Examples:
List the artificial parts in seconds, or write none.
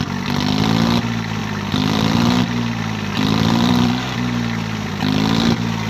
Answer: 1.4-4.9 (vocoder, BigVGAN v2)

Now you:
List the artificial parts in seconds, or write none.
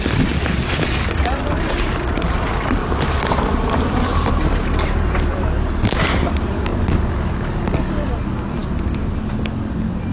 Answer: 4.1-6.1 (vocoder, BigVGAN v2); 8.6-9.3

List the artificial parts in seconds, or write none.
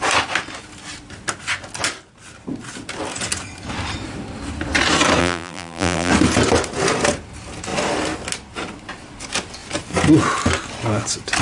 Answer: 5.2-6.1 (vocoder, BigVGAN v2)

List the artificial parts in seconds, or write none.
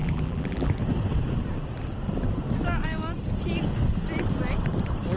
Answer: 0.0-0.7 (vocoder, BigVGAN v2)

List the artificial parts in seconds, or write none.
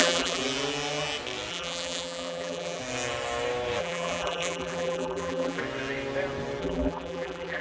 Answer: 0.0-0.4 (vocoder, BigVGAN v2); 1.5-2.8; 3.8-5.6; 6.6-7.6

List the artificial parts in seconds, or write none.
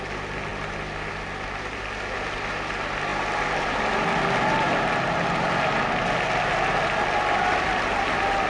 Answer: none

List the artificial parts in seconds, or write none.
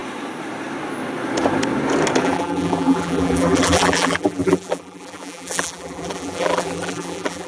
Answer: 2.2-7.5 (vocoder, BigVGAN v2)